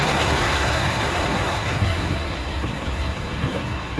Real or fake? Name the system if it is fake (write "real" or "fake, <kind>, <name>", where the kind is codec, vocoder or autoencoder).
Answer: fake, codec, SNAC